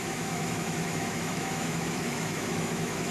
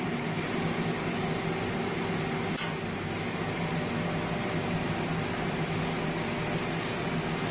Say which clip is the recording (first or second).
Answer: second